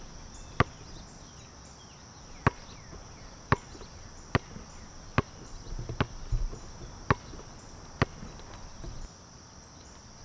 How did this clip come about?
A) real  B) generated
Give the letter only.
A